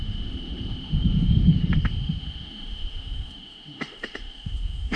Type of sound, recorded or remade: remade